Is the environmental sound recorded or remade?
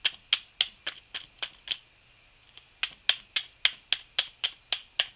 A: recorded